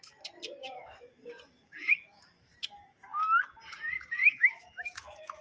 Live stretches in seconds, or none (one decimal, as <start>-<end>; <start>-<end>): 0.0-0.6; 3.4-4.2